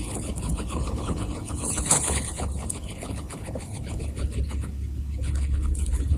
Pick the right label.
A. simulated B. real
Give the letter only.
A